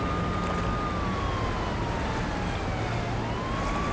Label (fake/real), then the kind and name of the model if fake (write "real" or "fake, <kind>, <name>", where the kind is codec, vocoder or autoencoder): real